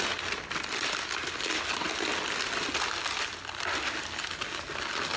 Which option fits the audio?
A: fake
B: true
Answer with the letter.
B